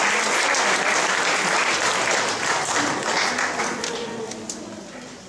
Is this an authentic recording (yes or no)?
yes